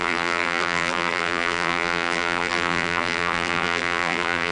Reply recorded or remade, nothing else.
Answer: remade